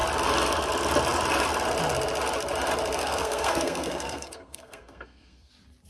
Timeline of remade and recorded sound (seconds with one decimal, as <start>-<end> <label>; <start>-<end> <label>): 0.0-3.0 recorded; 3.0-5.5 remade; 5.5-5.9 recorded

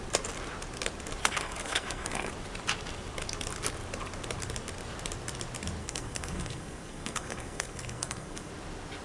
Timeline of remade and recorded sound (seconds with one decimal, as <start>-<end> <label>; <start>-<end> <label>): 0.0-1.2 recorded; 1.2-2.3 remade; 2.3-5.8 recorded; 5.8-8.5 remade; 8.5-9.0 recorded

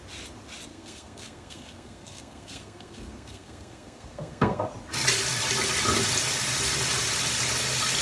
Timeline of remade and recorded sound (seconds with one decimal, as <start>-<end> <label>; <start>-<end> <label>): 0.0-0.7 recorded; 0.7-4.7 remade; 4.7-8.0 recorded